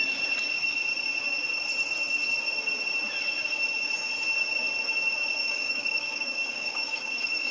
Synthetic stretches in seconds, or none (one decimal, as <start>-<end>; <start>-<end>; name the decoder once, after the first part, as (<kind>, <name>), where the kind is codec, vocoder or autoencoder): 5.4-7.5 (codec, DAC)